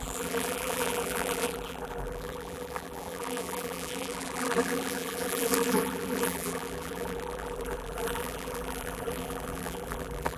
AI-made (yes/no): yes